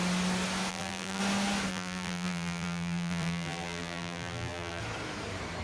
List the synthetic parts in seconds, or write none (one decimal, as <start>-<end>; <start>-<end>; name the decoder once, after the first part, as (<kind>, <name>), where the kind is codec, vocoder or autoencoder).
0.7-1.2 (vocoder, BigVGAN v2); 1.7-4.8